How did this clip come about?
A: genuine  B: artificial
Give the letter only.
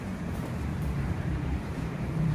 B